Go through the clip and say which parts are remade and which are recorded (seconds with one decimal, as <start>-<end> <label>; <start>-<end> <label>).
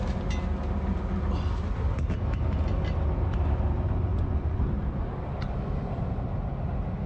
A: 0.0-4.1 recorded; 4.1-4.6 remade; 4.6-7.1 recorded